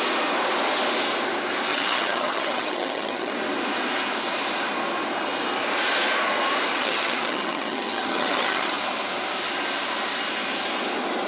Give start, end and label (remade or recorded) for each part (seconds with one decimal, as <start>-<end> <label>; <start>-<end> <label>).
0.0-1.7 recorded; 1.7-3.3 remade; 3.3-6.7 recorded; 6.7-8.8 remade; 8.8-11.3 recorded